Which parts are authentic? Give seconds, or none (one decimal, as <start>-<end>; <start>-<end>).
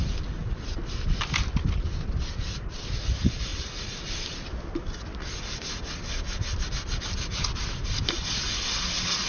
0.0-9.3